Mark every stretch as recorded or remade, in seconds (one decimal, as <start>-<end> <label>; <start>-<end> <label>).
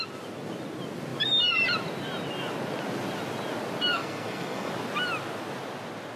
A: 0.0-3.9 recorded; 3.9-4.7 remade; 4.7-6.2 recorded